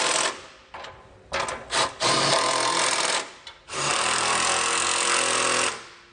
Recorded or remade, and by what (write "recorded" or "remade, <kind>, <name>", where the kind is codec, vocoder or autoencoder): recorded